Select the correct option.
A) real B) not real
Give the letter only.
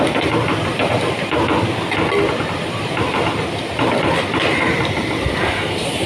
A